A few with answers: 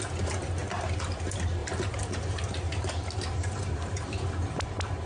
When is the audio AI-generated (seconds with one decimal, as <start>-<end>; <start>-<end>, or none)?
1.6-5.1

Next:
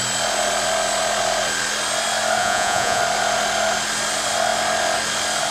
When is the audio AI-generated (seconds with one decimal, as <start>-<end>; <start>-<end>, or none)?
2.4-3.0

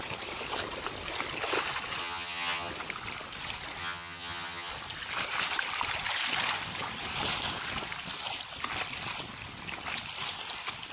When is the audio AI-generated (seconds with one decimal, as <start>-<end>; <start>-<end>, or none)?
2.0-2.7; 3.8-4.7

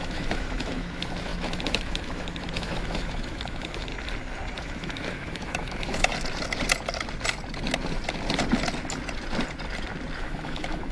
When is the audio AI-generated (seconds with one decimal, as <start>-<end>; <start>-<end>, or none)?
0.0-3.9; 4.6-6.1; 10.2-10.9